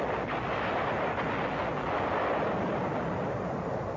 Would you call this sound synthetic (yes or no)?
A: no